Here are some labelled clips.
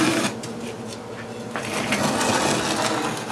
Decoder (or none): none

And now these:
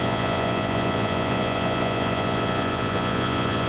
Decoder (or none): vocoder, Vocos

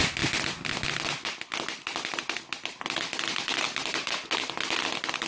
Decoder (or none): none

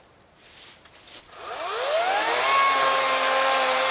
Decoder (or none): none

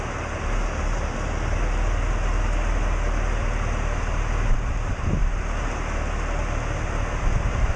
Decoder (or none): none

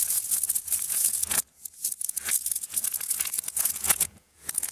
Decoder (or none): vocoder, Vocos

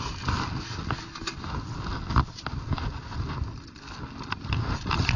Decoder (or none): none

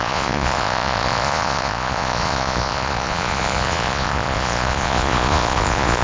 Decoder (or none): vocoder, Vocos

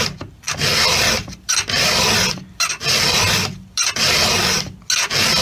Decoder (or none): none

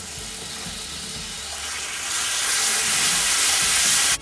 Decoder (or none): none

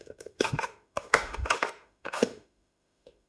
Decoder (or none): autoencoder, DAC-VAE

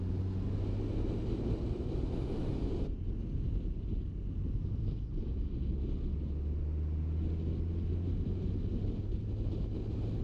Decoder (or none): none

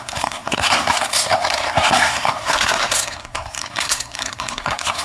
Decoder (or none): codec, SNAC